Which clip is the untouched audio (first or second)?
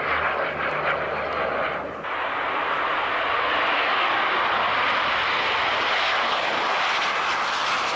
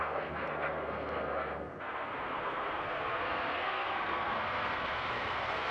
first